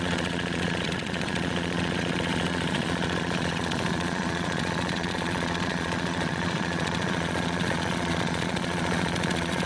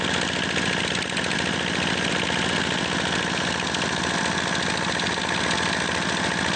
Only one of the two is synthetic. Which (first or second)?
first